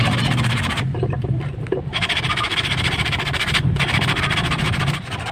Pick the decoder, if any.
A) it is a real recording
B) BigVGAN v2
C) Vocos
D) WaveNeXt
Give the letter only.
B